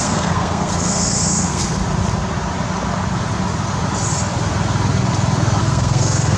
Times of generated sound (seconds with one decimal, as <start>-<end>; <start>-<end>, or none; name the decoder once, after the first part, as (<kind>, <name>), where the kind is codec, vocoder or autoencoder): 0.0-1.8 (codec, SNAC); 5.6-6.4